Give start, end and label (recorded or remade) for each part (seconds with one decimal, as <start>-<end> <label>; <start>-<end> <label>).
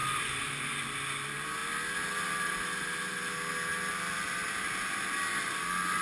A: 0.0-0.8 remade; 0.8-6.0 recorded